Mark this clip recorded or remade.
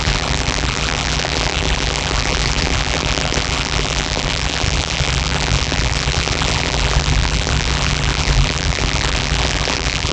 remade